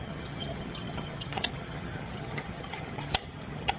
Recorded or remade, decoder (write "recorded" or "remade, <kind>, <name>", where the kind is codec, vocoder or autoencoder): remade, vocoder, HiFi-GAN